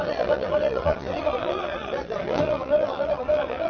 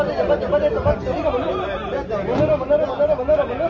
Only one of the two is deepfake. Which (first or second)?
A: first